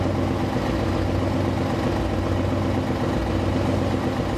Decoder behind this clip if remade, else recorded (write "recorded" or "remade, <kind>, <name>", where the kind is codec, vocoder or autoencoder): recorded